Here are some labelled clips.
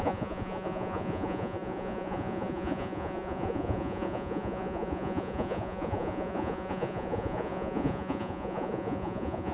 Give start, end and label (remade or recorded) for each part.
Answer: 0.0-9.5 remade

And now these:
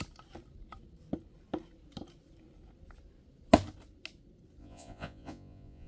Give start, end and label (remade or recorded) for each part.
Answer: 0.0-4.6 recorded; 4.6-5.9 remade

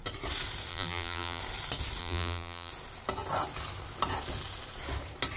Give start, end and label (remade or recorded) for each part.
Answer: 0.0-0.7 recorded; 0.7-1.4 remade; 1.4-2.0 recorded; 2.0-2.7 remade; 2.7-5.4 recorded

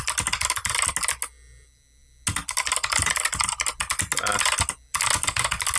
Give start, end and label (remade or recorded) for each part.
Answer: 0.0-5.8 recorded

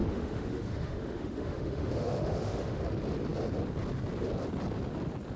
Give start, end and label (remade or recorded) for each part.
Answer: 0.0-2.8 remade; 2.8-5.4 recorded